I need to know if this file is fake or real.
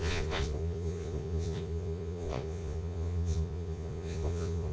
fake